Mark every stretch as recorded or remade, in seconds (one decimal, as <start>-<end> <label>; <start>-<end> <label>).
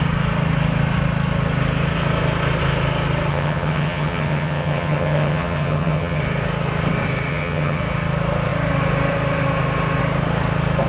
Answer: 0.0-3.3 recorded; 3.3-6.2 remade; 6.2-7.3 recorded; 7.3-7.8 remade; 7.8-10.9 recorded